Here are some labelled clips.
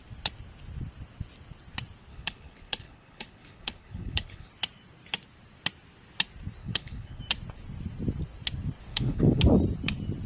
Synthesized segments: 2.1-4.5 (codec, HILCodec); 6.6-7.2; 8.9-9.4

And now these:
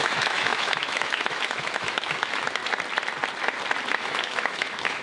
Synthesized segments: 0.0-2.6 (autoencoder, DAC-VAE); 3.9-5.0

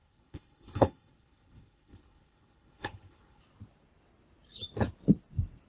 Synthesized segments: 0.0-3.4 (codec, HILCodec)